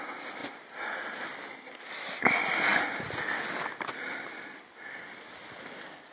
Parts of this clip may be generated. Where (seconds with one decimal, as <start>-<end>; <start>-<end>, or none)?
none